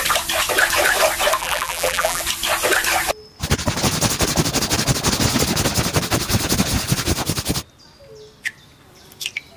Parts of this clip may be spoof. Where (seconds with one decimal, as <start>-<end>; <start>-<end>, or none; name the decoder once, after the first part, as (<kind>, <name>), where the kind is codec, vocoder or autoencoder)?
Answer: 1.4-2.2 (vocoder, BigVGAN v2)